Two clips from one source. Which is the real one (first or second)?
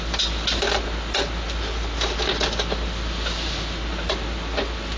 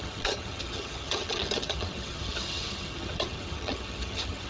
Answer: first